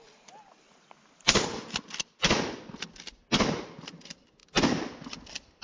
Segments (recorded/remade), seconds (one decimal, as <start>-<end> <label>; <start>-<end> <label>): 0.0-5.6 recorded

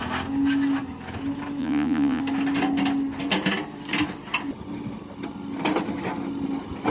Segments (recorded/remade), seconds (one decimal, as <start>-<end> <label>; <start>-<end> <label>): 0.0-1.6 recorded; 1.6-2.2 remade; 2.2-6.9 recorded

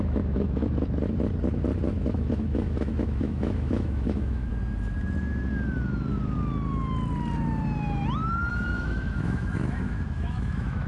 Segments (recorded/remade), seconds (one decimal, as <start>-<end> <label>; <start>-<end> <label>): 0.0-0.6 remade; 0.6-1.9 recorded; 1.9-4.5 remade; 4.5-8.5 recorded; 8.5-10.9 remade

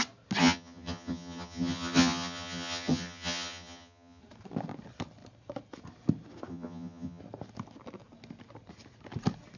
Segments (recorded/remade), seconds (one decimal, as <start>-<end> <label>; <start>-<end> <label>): 0.0-0.4 recorded; 0.4-4.2 remade; 4.2-6.5 recorded; 6.5-7.2 remade; 7.2-9.6 recorded

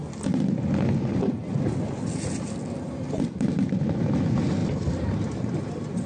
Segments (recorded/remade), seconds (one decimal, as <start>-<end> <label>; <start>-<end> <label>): 0.0-6.1 recorded